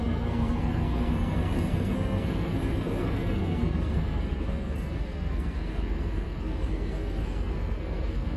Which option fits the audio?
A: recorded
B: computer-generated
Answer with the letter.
B